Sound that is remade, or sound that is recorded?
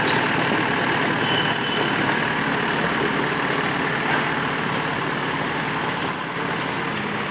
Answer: recorded